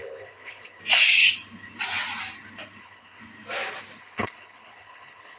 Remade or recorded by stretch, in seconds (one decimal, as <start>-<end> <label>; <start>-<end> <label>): 0.0-0.8 remade; 0.8-2.8 recorded; 2.8-3.2 remade; 3.2-4.0 recorded; 4.0-5.4 remade